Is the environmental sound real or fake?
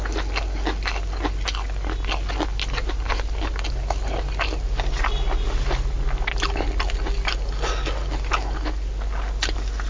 real